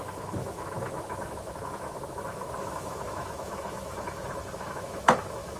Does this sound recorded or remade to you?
remade